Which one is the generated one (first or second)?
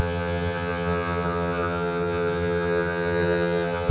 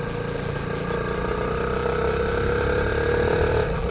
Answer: first